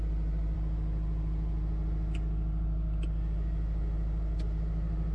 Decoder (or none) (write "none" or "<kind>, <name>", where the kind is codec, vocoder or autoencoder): none